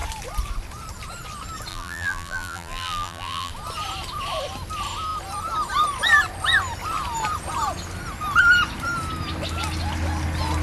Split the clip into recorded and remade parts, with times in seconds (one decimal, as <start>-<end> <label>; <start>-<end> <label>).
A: 0.0-1.7 recorded; 1.7-3.5 remade; 3.5-10.6 recorded